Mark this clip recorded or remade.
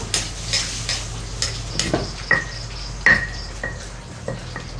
recorded